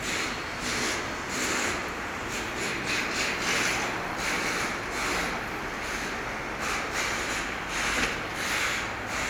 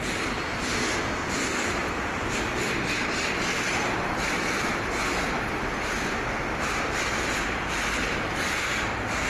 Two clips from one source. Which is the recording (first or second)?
first